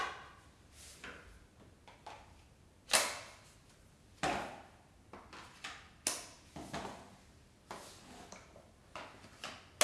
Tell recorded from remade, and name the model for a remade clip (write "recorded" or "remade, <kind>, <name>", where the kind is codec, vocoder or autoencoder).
recorded